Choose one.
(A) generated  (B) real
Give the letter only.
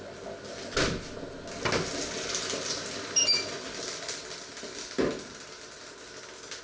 B